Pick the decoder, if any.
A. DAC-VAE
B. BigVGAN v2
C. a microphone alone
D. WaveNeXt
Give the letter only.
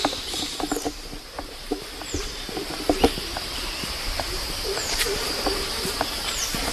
B